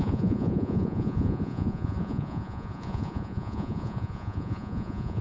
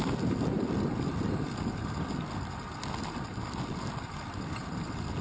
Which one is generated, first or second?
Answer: first